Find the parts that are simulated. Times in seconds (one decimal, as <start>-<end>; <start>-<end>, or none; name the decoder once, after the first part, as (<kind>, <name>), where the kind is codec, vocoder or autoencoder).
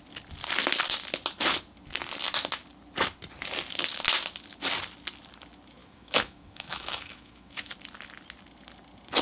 5.8-7.7 (autoencoder, DAC-VAE)